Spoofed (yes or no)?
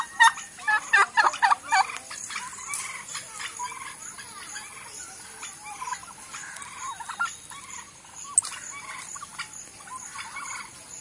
no